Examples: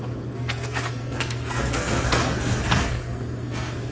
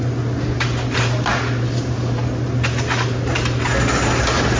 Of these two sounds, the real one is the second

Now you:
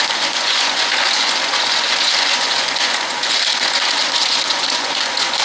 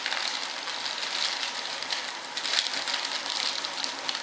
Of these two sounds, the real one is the second